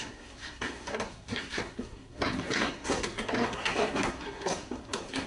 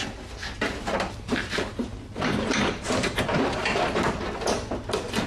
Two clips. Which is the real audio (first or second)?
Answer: second